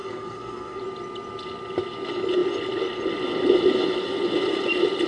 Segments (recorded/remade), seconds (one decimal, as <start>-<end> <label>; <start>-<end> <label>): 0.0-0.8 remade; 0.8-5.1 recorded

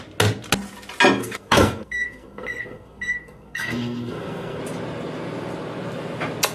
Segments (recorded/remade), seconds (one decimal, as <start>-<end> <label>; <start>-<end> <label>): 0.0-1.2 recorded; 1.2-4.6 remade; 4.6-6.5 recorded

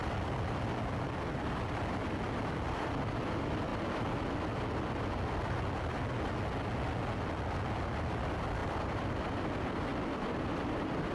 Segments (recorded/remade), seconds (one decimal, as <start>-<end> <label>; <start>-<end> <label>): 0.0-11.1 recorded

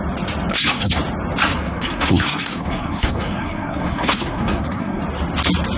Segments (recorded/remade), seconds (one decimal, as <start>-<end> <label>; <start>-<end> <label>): 0.0-0.5 recorded; 0.5-1.0 remade; 1.0-1.5 recorded; 1.5-5.0 remade; 5.0-5.8 recorded

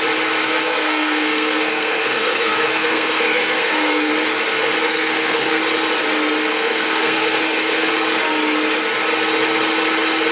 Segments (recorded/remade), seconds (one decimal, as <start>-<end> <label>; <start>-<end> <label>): 0.0-0.4 recorded; 0.4-4.1 remade; 4.1-4.9 recorded; 4.9-5.6 remade; 5.6-6.5 recorded; 6.5-7.9 remade; 7.9-10.3 recorded

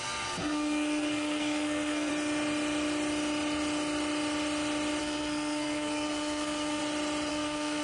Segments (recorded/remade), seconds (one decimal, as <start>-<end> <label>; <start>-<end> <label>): 0.0-2.1 remade; 2.1-5.0 recorded; 5.0-6.8 remade; 6.8-7.3 recorded; 7.3-7.8 remade

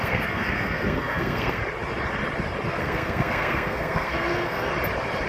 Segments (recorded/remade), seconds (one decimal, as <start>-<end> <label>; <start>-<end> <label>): 0.0-1.6 remade; 1.6-2.8 recorded; 2.8-4.7 remade; 4.7-5.3 recorded

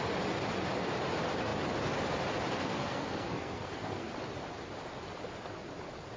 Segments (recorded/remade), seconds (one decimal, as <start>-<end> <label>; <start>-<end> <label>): 0.0-2.6 recorded; 2.6-4.1 remade; 4.1-6.2 recorded